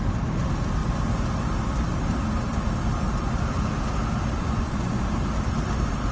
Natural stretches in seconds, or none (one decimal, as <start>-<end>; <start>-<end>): 0.0-4.4; 5.1-6.1